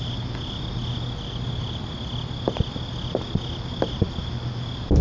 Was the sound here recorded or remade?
recorded